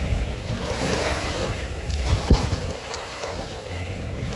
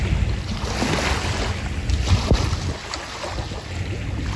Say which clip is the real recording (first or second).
second